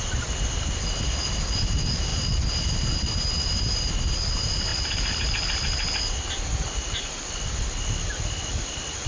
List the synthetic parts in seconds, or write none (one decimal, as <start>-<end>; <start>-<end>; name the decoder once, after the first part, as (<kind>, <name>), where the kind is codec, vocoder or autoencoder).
none